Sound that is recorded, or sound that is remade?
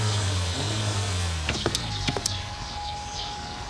remade